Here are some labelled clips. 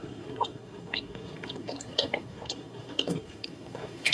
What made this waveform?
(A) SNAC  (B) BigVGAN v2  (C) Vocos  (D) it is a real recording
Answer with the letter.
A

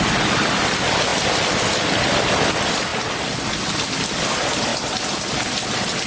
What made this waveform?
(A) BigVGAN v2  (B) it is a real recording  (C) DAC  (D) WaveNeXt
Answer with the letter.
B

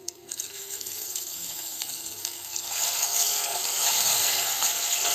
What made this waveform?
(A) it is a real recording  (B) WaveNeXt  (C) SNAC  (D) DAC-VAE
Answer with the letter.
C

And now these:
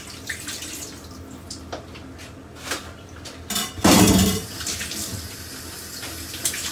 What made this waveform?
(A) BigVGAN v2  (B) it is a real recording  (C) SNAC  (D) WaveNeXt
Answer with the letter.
B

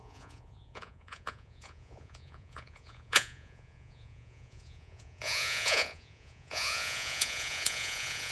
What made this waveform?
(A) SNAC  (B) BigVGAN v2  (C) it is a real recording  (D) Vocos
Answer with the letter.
D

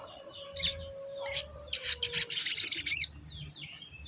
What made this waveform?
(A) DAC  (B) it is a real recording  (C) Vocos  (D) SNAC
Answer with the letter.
B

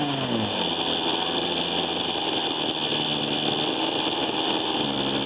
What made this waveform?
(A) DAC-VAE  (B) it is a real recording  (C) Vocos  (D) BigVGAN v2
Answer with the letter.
B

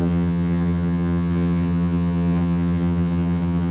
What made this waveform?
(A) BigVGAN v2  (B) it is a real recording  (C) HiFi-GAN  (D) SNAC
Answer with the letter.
C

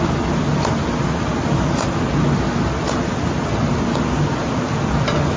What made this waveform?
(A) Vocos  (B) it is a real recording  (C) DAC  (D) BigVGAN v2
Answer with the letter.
B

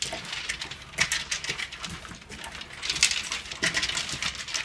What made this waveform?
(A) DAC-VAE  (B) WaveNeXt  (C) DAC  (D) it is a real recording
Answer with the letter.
D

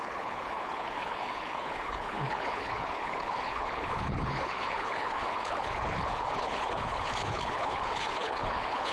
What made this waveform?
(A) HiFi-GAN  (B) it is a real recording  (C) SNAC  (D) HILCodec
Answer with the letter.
D